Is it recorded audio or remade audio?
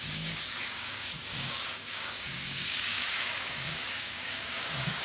remade